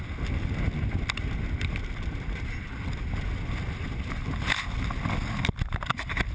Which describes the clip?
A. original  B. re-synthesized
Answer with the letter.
A